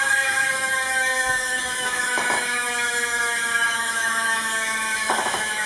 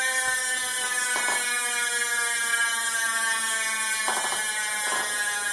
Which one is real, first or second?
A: second